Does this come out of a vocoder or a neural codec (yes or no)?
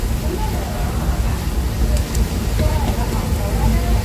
no